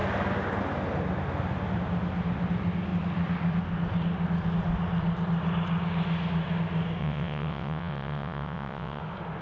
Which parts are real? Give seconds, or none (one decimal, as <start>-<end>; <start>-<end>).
0.0-7.0; 9.0-9.4